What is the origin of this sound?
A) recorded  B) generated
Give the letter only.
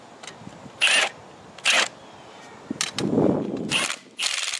A